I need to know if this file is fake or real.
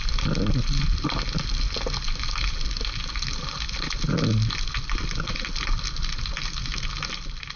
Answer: real